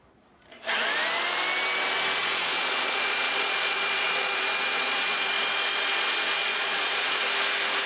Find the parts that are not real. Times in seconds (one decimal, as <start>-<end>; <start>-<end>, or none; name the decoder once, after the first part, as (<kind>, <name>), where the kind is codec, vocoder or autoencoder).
2.2-5.3 (vocoder, Vocos); 6.4-7.2